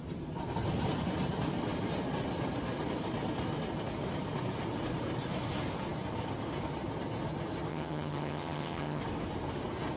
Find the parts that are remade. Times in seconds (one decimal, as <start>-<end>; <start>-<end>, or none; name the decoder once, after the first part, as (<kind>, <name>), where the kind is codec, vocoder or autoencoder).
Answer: 7.7-9.0 (vocoder, HiFi-GAN)